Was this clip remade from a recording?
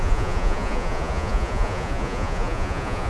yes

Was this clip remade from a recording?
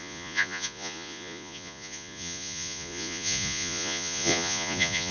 yes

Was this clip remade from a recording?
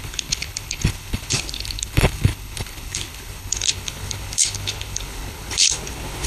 yes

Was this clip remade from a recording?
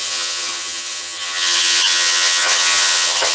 yes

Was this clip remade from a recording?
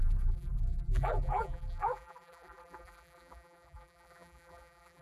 yes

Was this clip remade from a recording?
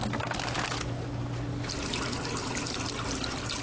no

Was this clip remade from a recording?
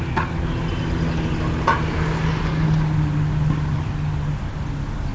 no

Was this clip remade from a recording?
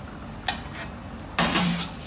no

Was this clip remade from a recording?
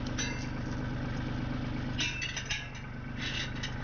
no